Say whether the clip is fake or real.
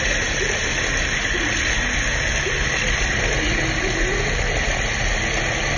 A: real